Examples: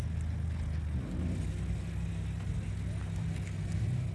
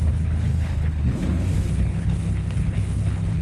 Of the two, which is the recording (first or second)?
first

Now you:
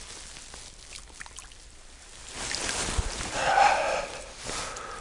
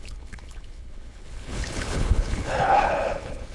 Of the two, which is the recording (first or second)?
first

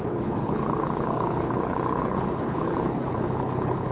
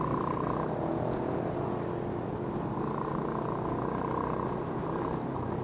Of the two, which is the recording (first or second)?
second